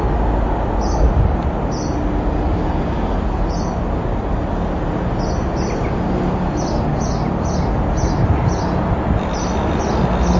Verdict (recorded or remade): recorded